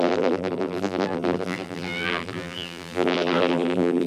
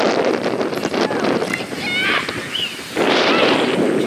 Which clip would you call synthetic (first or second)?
first